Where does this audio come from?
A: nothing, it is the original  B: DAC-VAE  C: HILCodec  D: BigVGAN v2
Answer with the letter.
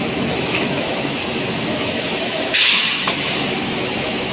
B